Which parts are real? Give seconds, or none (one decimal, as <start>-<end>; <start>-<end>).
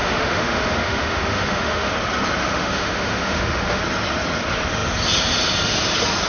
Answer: 1.9-2.4; 3.8-6.3